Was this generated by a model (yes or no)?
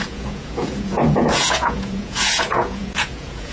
yes